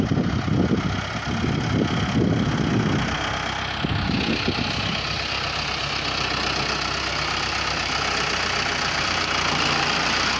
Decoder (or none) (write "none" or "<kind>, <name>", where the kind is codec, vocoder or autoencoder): none